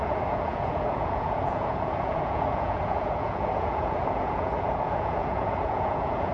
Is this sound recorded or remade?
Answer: remade